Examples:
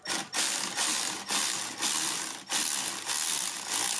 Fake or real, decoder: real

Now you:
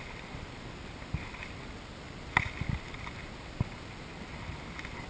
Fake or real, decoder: real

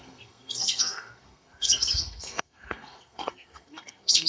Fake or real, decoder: fake, codec, SNAC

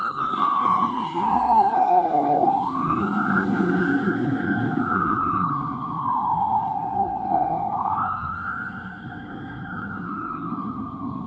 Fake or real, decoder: fake, codec, SNAC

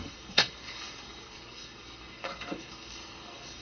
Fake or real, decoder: fake, codec, SNAC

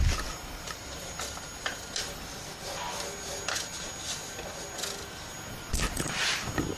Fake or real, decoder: real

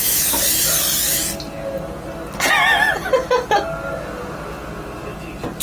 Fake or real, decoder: real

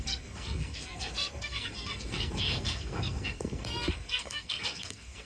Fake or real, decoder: fake, codec, SNAC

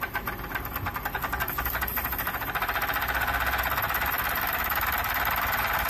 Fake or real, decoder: real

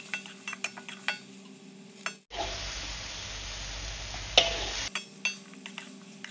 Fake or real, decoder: real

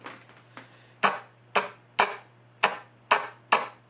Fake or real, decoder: real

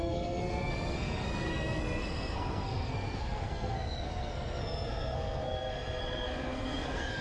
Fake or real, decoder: fake, codec, SNAC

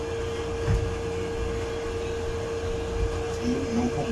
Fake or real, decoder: real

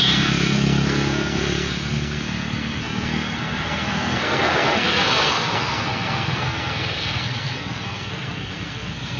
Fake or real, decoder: fake, codec, SNAC